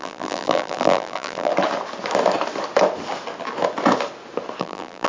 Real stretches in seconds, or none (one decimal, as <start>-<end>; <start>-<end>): 1.5-4.6